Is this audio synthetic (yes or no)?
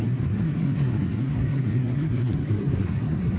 yes